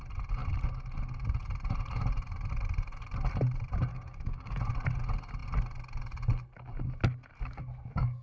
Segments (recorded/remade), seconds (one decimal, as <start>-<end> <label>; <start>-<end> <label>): 0.0-3.9 recorded; 3.9-4.6 remade; 4.6-8.2 recorded